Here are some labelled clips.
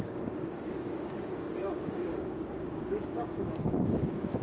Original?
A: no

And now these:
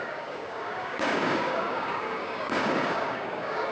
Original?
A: no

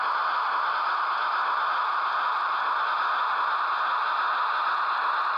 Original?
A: yes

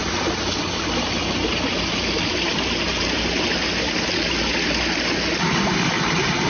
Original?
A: yes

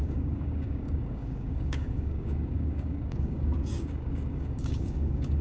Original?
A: no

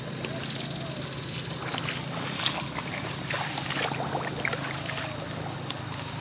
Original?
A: yes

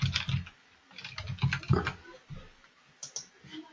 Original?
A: yes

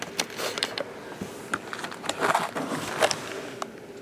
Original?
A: yes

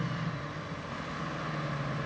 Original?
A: yes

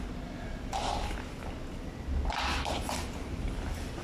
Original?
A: yes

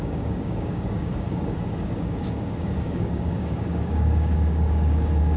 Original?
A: no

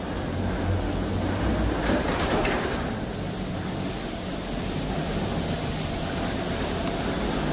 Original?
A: yes